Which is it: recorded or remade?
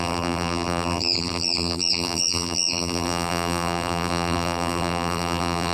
remade